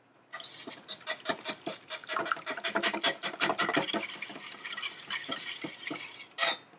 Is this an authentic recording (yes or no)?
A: yes